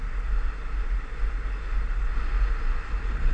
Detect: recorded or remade recorded